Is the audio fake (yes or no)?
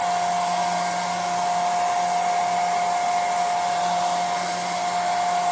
no